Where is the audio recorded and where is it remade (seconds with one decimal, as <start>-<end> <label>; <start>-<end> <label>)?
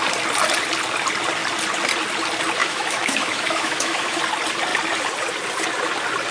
0.0-2.6 recorded; 2.6-4.2 remade; 4.2-6.3 recorded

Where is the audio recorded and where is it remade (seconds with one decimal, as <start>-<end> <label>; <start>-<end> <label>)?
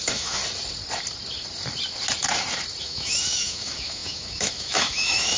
0.0-0.4 remade; 0.4-2.8 recorded; 2.8-5.4 remade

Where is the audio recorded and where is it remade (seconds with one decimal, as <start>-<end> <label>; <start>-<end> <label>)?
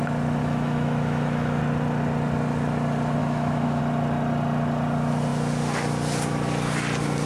0.0-0.4 recorded; 0.4-1.6 remade; 1.6-3.2 recorded; 3.2-3.8 remade; 3.8-7.3 recorded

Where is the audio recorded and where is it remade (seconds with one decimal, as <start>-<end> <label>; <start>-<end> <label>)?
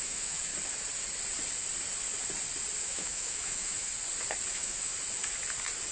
0.0-0.5 remade; 0.5-2.8 recorded; 2.8-3.9 remade; 3.9-4.5 recorded; 4.5-4.9 remade; 4.9-5.9 recorded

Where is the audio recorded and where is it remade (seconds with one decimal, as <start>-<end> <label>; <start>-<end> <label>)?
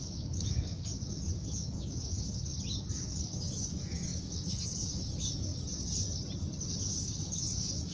0.0-2.5 remade; 2.5-3.0 recorded; 3.0-5.5 remade; 5.5-6.7 recorded; 6.7-7.9 remade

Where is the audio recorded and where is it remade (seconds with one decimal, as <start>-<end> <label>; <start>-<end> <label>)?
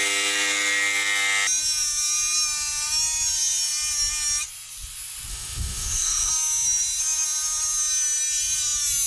0.0-5.3 recorded; 5.3-6.3 remade; 6.3-9.1 recorded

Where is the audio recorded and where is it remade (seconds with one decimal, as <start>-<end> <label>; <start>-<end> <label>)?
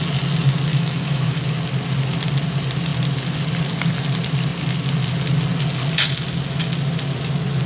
0.0-0.7 recorded; 0.7-1.4 remade; 1.4-7.7 recorded